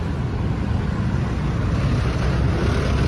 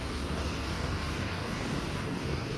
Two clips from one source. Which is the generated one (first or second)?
second